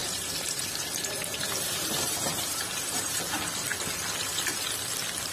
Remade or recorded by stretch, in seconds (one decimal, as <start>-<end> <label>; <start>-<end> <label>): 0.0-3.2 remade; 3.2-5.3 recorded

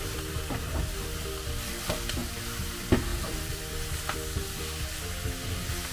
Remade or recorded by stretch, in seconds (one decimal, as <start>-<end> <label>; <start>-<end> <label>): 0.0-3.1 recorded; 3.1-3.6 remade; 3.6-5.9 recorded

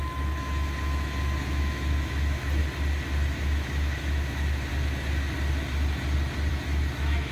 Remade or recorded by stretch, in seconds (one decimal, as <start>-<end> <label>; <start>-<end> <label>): 0.0-2.6 remade; 2.6-3.4 recorded; 3.4-4.7 remade; 4.7-6.5 recorded; 6.5-7.3 remade

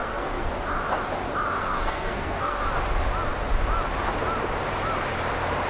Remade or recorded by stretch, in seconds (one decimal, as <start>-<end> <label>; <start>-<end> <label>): 0.0-0.5 remade; 0.5-1.6 recorded; 1.6-2.6 remade; 2.6-5.7 recorded

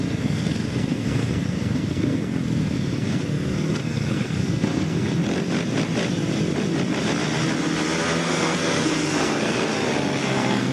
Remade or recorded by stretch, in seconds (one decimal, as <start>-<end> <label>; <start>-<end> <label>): 0.0-5.2 remade; 5.2-8.2 recorded; 8.2-9.7 remade; 9.7-10.2 recorded; 10.2-10.7 remade